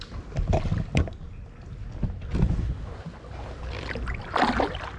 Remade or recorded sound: recorded